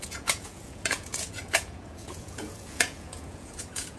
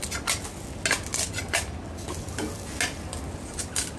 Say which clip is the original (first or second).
second